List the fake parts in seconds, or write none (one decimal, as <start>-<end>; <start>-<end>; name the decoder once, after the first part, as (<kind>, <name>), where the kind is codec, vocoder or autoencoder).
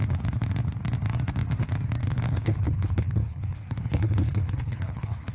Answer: 2.0-5.3 (codec, HILCodec)